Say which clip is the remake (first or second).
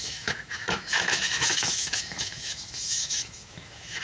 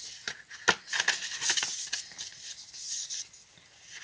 first